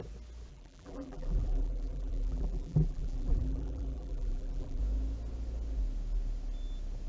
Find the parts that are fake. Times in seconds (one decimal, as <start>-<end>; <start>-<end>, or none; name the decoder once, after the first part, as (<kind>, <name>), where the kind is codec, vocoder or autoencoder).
0.5-4.8 (vocoder, BigVGAN v2)